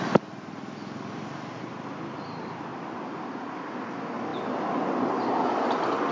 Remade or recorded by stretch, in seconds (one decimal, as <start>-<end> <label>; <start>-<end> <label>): 0.0-2.7 recorded; 2.7-3.5 remade; 3.5-6.1 recorded